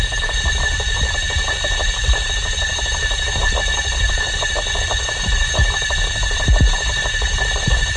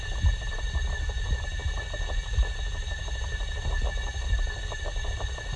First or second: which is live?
second